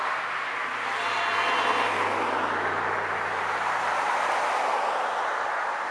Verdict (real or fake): real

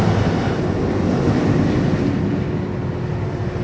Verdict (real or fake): real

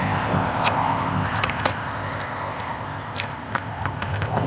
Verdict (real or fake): fake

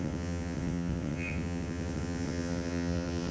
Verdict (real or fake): fake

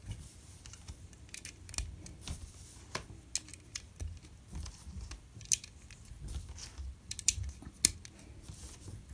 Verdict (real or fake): real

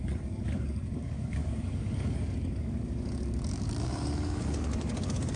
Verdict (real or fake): fake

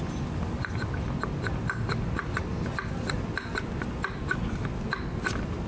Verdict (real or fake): real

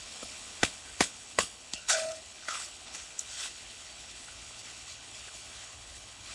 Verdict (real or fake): fake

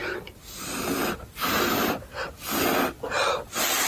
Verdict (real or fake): real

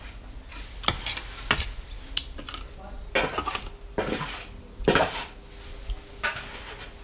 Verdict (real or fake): real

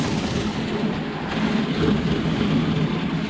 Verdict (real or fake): real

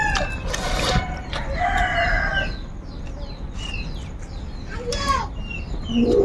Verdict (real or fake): real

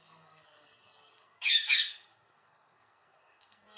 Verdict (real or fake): fake